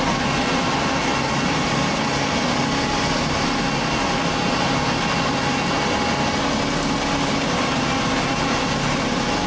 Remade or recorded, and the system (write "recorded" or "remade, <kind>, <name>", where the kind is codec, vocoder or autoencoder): recorded